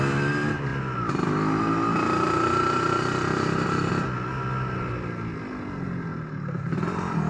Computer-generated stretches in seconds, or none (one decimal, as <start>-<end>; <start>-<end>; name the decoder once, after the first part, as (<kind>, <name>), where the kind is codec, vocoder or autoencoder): none